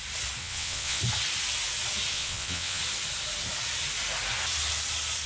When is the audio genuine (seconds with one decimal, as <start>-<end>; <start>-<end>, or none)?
0.0-0.4; 1.0-2.1; 2.8-5.3